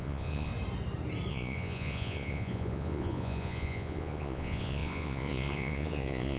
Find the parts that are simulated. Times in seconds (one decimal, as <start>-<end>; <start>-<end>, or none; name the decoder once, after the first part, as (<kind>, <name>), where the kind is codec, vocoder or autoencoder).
0.0-0.5 (vocoder, Vocos); 1.3-6.4